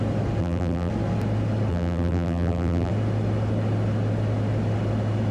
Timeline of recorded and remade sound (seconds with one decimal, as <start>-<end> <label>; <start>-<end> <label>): 0.0-0.4 recorded; 0.4-0.9 remade; 0.9-1.7 recorded; 1.7-2.9 remade; 2.9-5.3 recorded